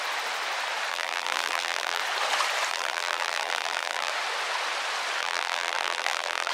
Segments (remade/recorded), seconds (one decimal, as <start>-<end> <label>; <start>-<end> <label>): 0.0-0.9 recorded; 0.9-2.0 remade; 2.0-2.7 recorded; 2.7-4.1 remade; 4.1-5.2 recorded; 5.2-6.5 remade